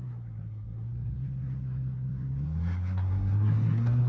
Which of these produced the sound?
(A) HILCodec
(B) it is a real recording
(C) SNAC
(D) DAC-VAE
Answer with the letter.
C